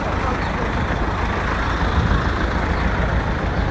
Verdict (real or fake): real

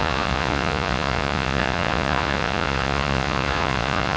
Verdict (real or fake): fake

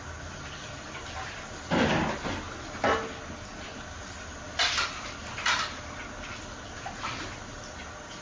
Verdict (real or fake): real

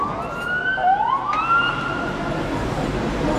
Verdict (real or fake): real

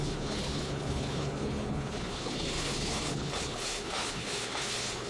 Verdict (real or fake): fake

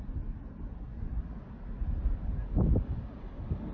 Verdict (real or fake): real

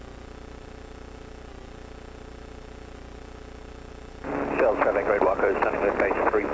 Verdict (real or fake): real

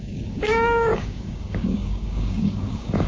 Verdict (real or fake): fake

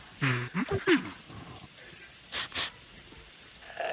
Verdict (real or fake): real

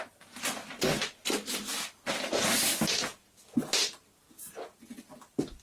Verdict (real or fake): real